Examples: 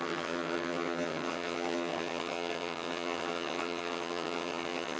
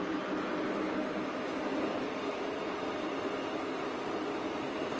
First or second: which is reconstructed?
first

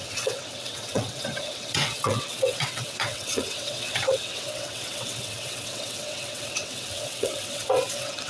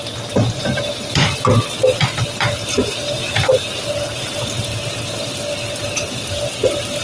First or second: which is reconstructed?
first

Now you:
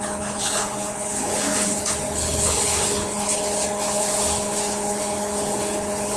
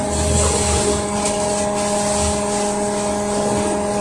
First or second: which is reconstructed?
first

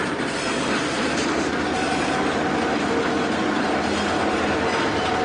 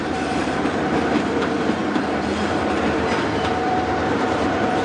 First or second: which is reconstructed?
second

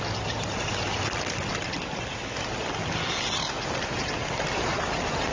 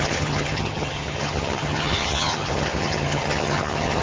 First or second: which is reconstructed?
second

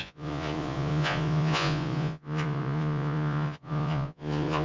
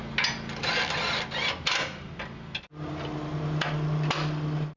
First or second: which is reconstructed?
first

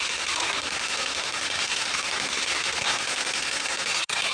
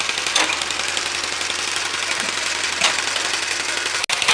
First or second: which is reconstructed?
first